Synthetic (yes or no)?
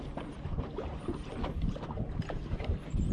no